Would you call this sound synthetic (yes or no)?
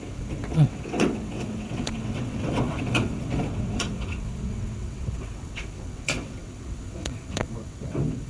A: yes